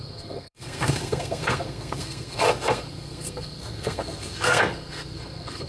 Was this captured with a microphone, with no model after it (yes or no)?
no